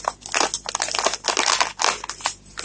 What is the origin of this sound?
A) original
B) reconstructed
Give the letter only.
A